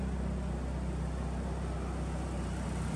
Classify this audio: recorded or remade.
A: recorded